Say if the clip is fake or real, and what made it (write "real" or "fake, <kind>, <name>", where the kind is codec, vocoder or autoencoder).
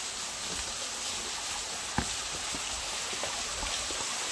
real